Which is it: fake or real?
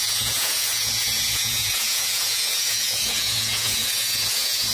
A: fake